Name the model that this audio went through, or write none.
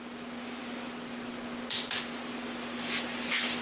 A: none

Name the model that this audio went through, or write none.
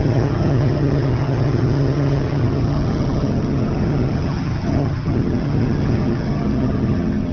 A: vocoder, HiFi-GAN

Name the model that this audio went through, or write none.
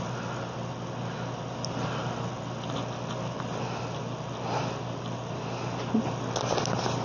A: none